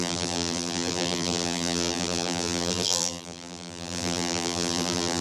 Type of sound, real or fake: fake